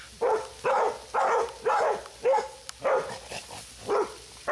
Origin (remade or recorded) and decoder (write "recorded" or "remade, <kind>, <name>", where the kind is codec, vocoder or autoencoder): recorded